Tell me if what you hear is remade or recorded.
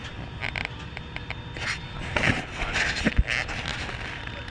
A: recorded